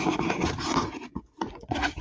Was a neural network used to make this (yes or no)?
yes